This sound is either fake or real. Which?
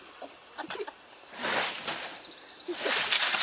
fake